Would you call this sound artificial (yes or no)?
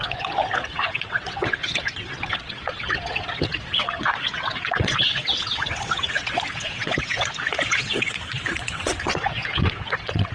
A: yes